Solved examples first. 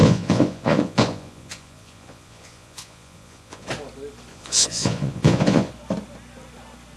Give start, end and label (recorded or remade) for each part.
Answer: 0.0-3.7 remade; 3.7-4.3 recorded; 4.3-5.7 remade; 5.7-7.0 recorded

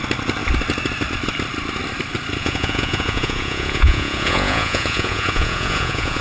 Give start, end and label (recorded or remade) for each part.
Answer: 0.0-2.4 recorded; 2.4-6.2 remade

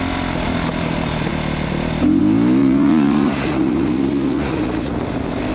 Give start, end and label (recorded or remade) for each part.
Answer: 0.0-2.6 recorded; 2.6-5.0 remade; 5.0-5.5 recorded

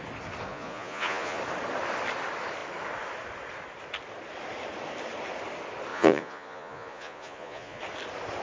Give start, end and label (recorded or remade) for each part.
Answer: 0.0-0.5 recorded; 0.5-1.4 remade; 1.4-5.9 recorded; 5.9-7.8 remade; 7.8-8.4 recorded